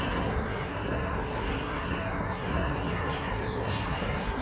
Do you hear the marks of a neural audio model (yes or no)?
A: yes